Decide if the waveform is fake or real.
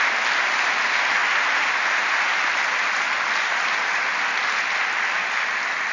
real